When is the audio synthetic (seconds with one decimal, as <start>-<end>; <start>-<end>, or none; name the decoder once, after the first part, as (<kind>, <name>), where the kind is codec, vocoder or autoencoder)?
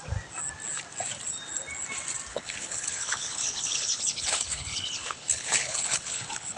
2.3-6.6 (codec, HILCodec)